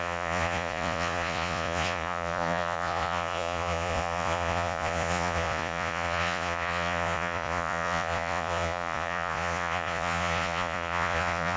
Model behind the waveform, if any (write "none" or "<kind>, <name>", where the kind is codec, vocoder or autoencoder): vocoder, Vocos